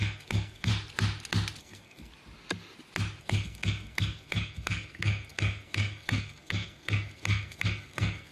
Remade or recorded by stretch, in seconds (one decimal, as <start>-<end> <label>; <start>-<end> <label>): 0.0-0.7 remade; 0.7-1.6 recorded; 1.6-2.1 remade; 2.1-3.2 recorded; 3.2-8.3 remade